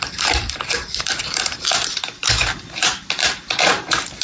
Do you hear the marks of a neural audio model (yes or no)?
yes